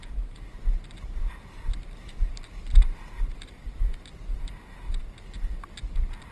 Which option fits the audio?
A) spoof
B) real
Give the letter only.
B